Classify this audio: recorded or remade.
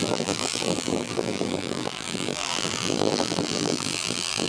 remade